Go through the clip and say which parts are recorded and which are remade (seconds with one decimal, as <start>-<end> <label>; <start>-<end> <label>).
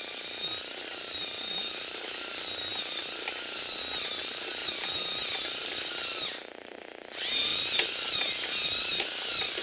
0.0-9.6 recorded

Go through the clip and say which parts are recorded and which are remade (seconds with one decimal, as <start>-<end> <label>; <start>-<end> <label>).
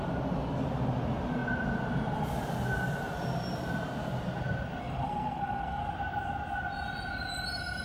0.0-4.8 recorded; 4.8-5.8 remade; 5.8-7.8 recorded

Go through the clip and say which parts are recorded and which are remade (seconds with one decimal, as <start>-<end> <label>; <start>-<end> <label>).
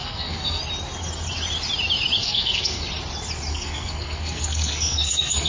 0.0-0.6 remade; 0.6-2.2 recorded; 2.2-2.8 remade; 2.8-3.5 recorded; 3.5-5.5 remade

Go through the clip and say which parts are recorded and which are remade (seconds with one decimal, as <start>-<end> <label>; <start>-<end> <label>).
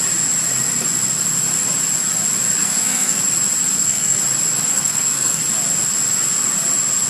0.0-2.6 recorded; 2.6-3.2 remade; 3.2-3.7 recorded; 3.7-4.2 remade; 4.2-4.7 recorded; 4.7-5.4 remade; 5.4-7.1 recorded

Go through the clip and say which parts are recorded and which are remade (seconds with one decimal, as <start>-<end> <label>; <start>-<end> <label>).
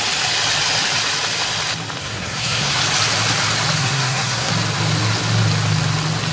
0.0-2.0 recorded; 2.0-2.8 remade; 2.8-3.8 recorded; 3.8-4.5 remade; 4.5-6.3 recorded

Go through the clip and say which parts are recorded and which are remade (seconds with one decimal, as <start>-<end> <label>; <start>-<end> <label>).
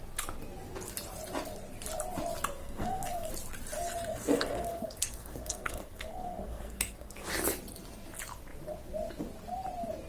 0.0-2.6 recorded; 2.6-3.3 remade; 3.3-4.1 recorded; 4.1-7.3 remade; 7.3-10.1 recorded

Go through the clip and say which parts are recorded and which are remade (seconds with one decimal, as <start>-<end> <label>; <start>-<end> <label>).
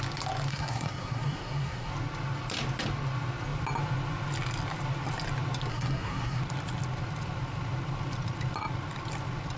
0.0-0.5 recorded; 0.5-1.9 remade; 1.9-5.7 recorded; 5.7-6.4 remade; 6.4-9.6 recorded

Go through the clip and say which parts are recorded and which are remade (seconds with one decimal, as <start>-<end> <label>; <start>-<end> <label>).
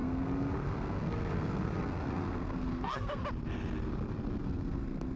0.0-3.2 remade; 3.2-4.4 recorded; 4.4-5.2 remade